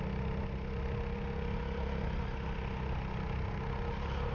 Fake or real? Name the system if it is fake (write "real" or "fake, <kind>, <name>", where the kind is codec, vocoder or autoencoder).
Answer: real